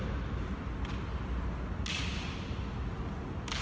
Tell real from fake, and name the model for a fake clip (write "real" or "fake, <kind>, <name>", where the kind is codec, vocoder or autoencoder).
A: real